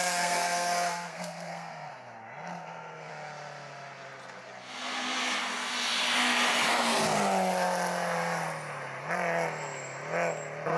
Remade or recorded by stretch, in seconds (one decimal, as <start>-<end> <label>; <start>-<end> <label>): 0.0-1.9 remade; 1.9-2.5 recorded; 2.5-3.1 remade; 3.1-10.8 recorded